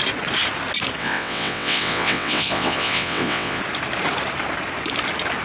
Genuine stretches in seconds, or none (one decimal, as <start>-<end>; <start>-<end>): 0.0-1.0; 3.6-5.4